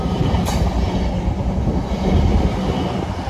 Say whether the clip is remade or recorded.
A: recorded